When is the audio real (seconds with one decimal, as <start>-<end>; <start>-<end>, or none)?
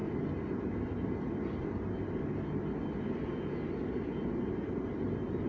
0.0-5.5